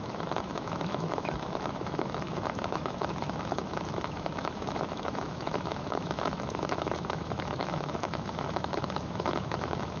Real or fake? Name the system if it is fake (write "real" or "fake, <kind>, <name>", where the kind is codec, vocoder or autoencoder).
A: fake, autoencoder, DAC-VAE